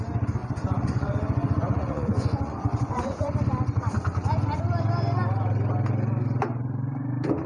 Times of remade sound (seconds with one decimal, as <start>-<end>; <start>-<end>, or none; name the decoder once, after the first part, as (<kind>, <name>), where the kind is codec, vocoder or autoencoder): 0.4-3.3 (vocoder, Vocos)